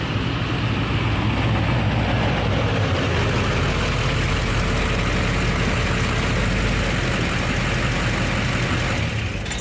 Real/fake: real